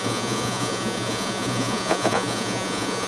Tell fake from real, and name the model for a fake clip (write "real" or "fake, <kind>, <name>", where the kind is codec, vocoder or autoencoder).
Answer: fake, vocoder, Vocos